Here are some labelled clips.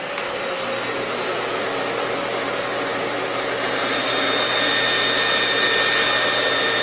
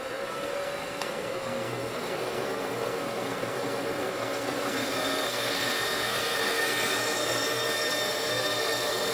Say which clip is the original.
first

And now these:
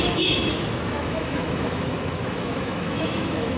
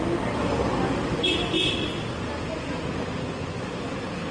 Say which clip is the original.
second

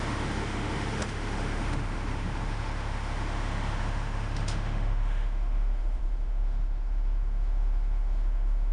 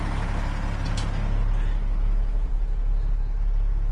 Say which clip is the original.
second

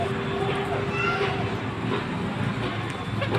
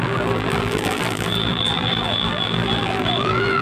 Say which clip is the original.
first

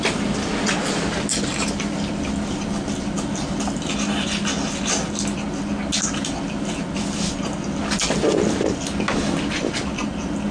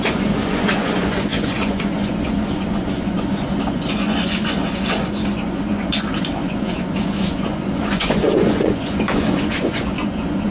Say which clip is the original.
first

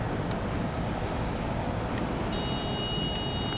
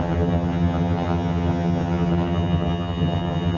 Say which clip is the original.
first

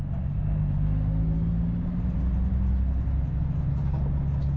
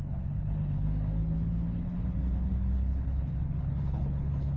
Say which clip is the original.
first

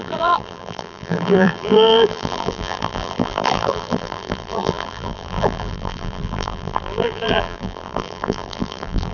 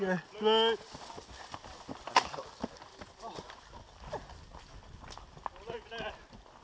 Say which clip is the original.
second